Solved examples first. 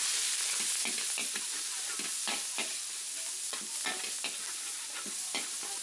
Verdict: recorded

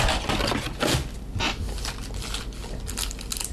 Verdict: recorded